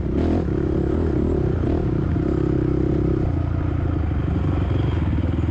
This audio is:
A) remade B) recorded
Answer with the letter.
B